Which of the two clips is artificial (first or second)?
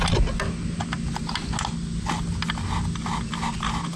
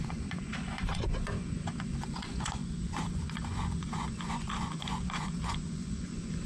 second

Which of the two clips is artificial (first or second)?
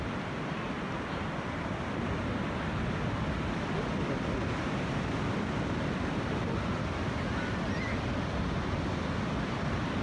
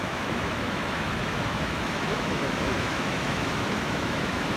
second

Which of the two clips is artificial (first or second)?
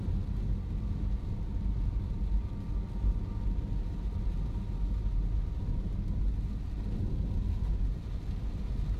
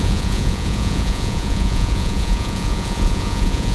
second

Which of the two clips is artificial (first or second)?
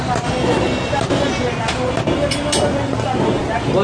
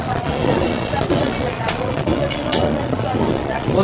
second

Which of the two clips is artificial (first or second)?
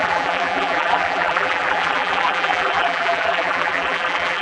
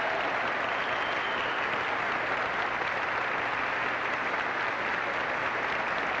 first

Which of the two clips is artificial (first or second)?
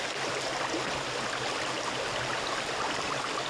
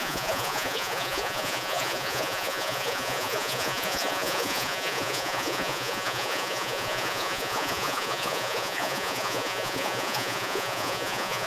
second